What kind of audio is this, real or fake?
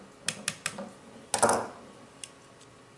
real